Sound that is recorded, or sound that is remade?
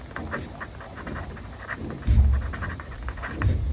recorded